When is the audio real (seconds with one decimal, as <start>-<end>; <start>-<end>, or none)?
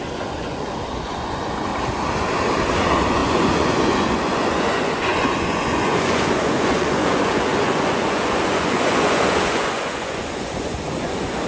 1.7-2.7